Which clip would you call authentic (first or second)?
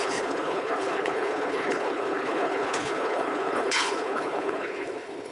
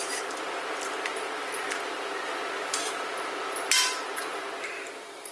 second